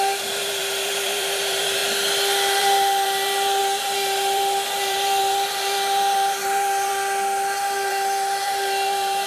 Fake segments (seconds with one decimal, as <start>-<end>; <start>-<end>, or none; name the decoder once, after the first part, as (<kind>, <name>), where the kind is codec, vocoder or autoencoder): 0.0-1.8 (vocoder, BigVGAN v2); 2.6-6.9; 7.9-9.3